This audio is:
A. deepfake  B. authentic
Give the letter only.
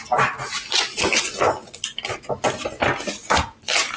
B